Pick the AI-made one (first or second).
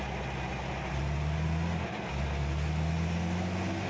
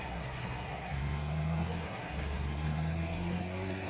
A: second